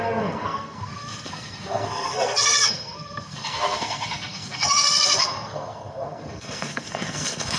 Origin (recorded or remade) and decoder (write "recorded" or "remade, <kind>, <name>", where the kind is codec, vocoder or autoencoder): remade, codec, SNAC